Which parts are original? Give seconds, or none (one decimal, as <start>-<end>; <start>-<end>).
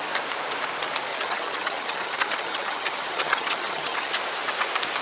0.0-1.1; 4.1-5.0